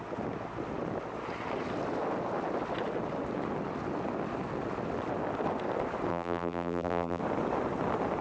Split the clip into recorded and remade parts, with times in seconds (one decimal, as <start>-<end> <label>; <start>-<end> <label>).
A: 0.0-6.1 recorded; 6.1-7.2 remade; 7.2-8.2 recorded